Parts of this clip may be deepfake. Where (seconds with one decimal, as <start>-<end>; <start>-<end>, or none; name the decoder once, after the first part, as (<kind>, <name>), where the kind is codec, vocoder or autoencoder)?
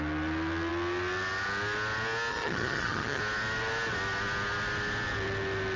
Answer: 2.3-3.2 (vocoder, HiFi-GAN)